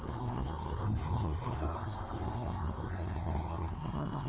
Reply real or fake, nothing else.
fake